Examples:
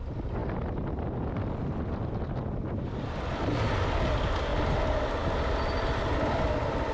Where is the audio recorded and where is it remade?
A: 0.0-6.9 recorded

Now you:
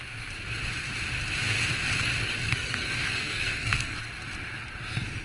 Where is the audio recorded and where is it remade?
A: 0.0-2.4 recorded; 2.4-4.0 remade; 4.0-5.2 recorded

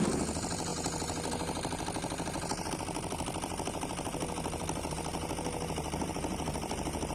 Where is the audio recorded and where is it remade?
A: 0.0-0.7 remade; 0.7-2.7 recorded; 2.7-5.1 remade; 5.1-6.1 recorded; 6.1-7.1 remade

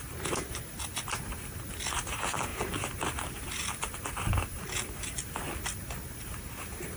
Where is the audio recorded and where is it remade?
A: 0.0-7.0 recorded

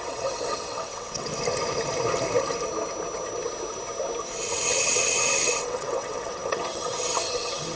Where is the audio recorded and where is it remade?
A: 0.0-1.3 remade; 1.3-4.5 recorded; 4.5-7.8 remade

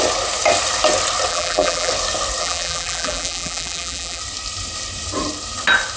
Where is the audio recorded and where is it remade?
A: 0.0-1.3 recorded; 1.3-1.9 remade; 1.9-2.4 recorded; 2.4-4.2 remade; 4.2-6.0 recorded

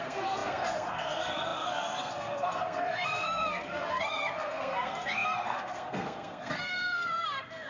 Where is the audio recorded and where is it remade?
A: 0.0-7.7 remade

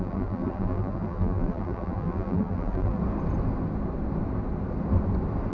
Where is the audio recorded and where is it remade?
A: 0.0-3.0 remade; 3.0-5.5 recorded